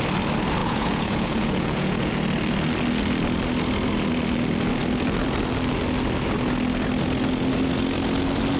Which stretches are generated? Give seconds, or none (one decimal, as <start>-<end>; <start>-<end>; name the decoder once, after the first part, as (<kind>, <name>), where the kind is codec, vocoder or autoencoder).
0.6-2.1 (vocoder, Vocos)